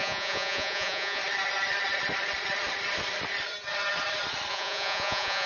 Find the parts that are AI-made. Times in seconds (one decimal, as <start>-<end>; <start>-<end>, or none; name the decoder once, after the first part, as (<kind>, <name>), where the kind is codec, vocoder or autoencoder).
0.0-1.2 (vocoder, Vocos); 4.5-5.5